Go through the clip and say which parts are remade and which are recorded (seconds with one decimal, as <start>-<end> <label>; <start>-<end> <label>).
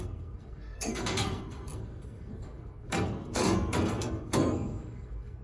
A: 0.0-5.4 remade